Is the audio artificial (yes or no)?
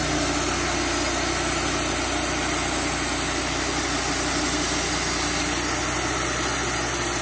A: no